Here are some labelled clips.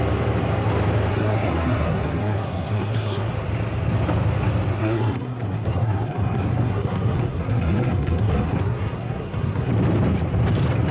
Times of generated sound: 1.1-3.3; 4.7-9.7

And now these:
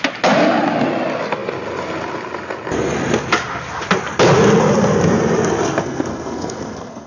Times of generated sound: 5.8-7.1

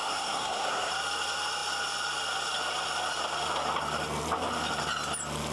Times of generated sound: 0.0-0.9

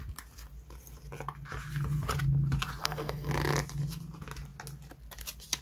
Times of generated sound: 2.8-3.3